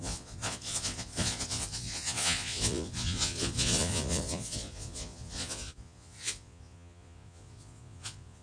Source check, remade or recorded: remade